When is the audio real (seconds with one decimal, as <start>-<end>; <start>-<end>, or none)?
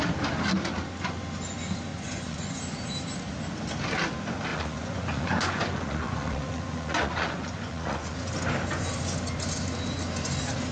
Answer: 0.0-1.9; 2.6-4.5; 8.3-10.7